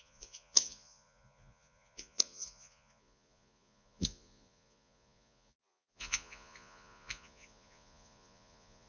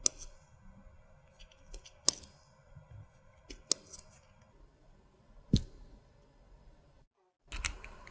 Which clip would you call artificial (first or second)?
first